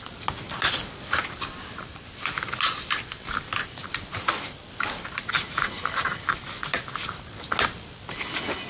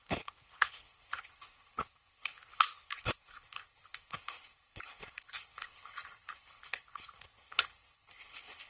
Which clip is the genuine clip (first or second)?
first